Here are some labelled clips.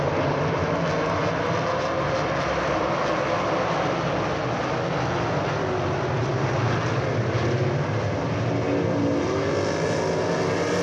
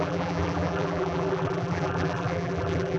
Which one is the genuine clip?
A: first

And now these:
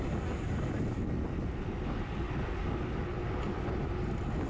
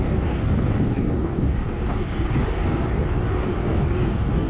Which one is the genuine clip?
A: first